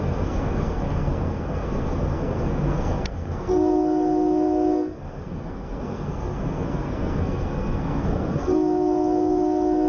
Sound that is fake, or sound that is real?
fake